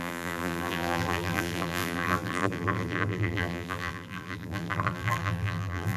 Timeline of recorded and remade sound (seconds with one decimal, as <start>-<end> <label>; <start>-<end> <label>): 0.0-6.0 remade